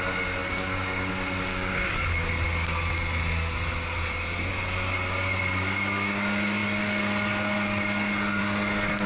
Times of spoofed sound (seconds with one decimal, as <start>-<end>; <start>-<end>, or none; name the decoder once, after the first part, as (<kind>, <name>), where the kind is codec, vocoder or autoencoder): 0.4-1.1 (codec, DAC); 1.5-2.3

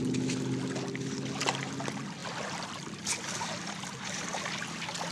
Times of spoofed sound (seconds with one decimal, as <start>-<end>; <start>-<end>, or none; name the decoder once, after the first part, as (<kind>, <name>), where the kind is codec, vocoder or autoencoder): none

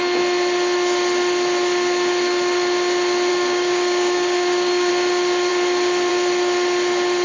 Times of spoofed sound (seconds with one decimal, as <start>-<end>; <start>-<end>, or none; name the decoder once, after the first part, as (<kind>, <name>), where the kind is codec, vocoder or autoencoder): 3.3-4.9 (codec, DAC)

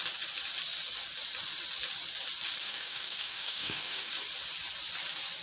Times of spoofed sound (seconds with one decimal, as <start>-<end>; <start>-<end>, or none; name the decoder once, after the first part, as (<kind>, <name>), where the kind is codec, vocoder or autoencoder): 2.6-4.1 (codec, DAC)

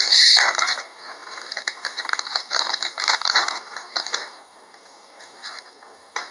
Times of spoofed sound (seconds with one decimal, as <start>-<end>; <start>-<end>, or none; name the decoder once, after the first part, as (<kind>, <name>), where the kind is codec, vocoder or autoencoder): 0.0-6.3 (codec, DAC)